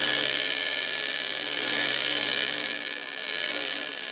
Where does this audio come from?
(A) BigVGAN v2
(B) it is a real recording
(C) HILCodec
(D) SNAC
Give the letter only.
A